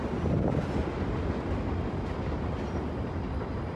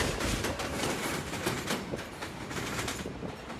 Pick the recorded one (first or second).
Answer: first